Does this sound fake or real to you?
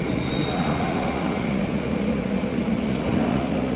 fake